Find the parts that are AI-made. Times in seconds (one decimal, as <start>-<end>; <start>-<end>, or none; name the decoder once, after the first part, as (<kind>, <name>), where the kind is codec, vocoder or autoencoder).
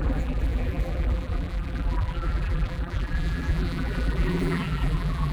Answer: 0.0-5.3 (vocoder, BigVGAN v2)